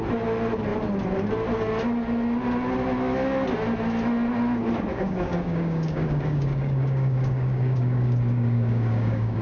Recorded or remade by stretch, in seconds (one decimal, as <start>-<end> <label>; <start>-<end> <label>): 0.0-4.9 recorded; 4.9-9.4 remade